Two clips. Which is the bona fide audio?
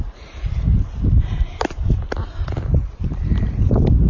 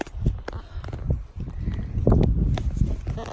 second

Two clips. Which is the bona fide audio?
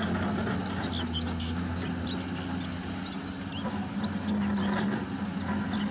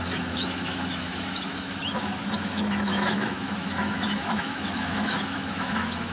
first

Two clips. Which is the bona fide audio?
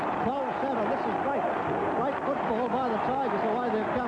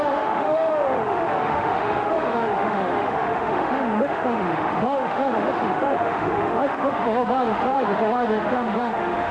first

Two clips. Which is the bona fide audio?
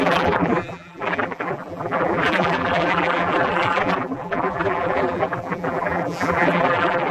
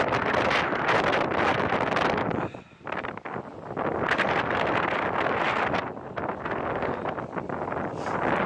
second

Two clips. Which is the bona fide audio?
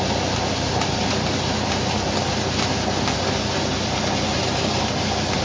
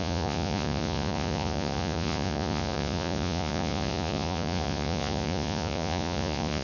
first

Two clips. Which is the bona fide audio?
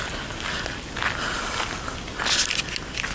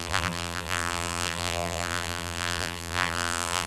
first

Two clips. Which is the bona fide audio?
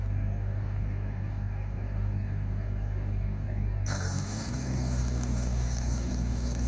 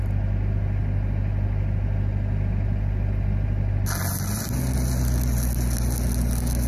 second